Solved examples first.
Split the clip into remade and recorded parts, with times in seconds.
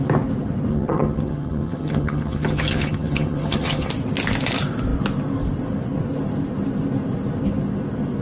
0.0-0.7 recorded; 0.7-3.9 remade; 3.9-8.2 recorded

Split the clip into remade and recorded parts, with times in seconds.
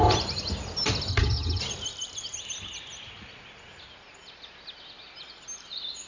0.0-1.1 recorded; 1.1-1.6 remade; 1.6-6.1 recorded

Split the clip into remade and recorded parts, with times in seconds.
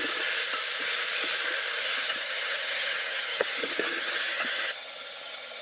0.0-1.8 recorded; 1.8-5.6 remade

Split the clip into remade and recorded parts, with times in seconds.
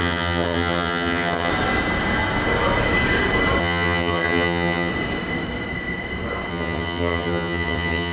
0.0-1.5 remade; 1.5-3.6 recorded; 3.6-4.9 remade; 4.9-6.5 recorded; 6.5-8.1 remade